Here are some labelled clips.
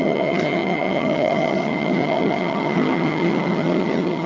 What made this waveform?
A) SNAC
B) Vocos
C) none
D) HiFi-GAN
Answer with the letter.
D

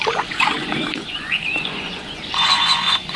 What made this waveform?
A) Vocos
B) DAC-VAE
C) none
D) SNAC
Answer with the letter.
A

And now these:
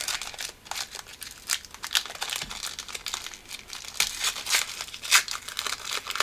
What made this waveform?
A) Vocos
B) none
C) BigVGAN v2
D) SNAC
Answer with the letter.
B